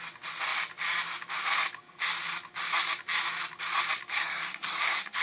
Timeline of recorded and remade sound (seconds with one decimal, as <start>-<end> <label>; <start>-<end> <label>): 0.0-4.1 recorded; 4.1-5.2 remade